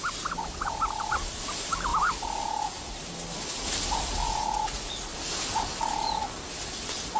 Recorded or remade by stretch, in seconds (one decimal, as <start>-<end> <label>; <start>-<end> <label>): 0.0-4.2 recorded; 4.2-4.9 remade; 4.9-7.2 recorded